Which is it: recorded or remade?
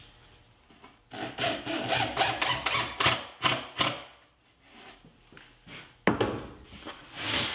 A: recorded